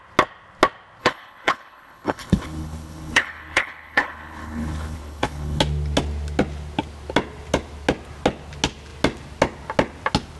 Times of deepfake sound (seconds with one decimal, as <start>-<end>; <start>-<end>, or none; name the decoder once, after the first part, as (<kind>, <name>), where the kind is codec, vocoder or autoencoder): 1.0-5.6 (codec, HILCodec)